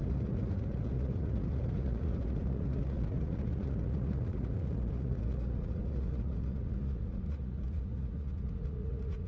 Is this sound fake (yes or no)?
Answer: yes